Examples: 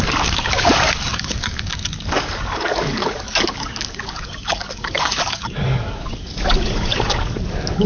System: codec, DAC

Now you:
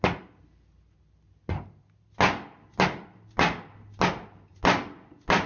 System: none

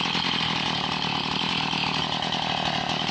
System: none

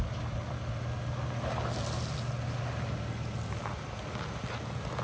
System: none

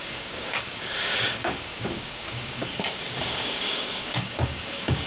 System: codec, DAC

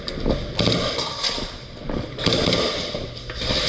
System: none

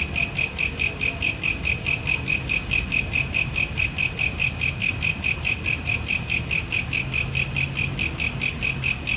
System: none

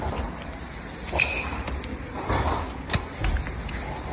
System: none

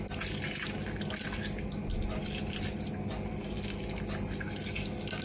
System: none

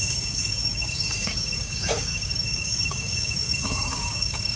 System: codec, DAC